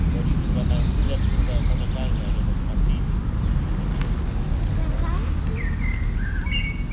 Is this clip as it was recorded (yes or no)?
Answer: yes